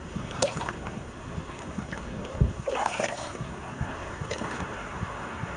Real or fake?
fake